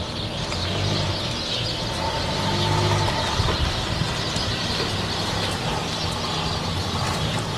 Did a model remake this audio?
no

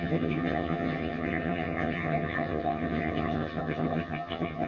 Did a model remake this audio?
yes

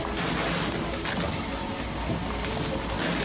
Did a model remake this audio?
no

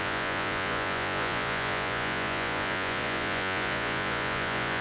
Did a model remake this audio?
yes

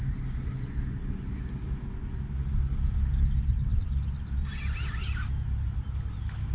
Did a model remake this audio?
no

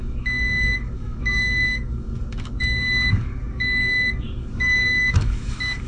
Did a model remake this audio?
yes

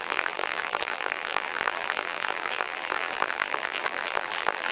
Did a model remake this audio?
yes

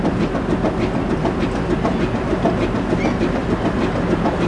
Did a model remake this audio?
no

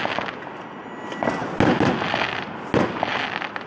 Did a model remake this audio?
no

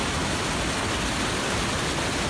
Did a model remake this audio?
no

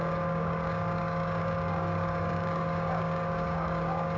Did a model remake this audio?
yes